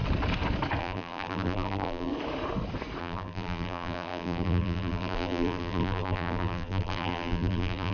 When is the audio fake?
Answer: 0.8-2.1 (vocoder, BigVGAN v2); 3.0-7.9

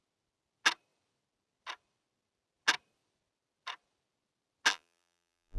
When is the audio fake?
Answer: 4.7-5.6 (vocoder, BigVGAN v2)

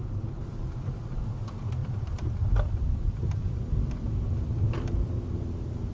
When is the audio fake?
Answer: 0.5-1.2 (vocoder, BigVGAN v2); 1.8-4.6

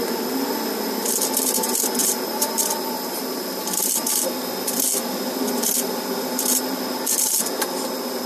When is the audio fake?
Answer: 2.0-6.6 (vocoder, BigVGAN v2)

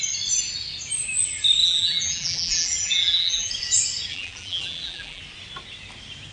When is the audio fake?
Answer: 1.6-3.5 (vocoder, BigVGAN v2); 4.1-5.2

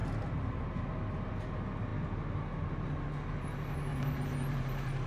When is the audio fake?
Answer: 3.9-5.1 (vocoder, BigVGAN v2)